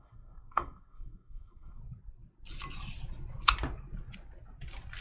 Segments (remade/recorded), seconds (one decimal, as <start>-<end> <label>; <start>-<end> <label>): 0.0-1.8 remade; 1.8-5.0 recorded